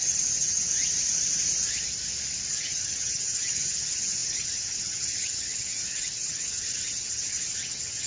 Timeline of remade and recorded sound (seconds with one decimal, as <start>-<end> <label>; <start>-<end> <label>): 0.0-0.7 remade; 0.7-2.5 recorded; 2.5-8.1 remade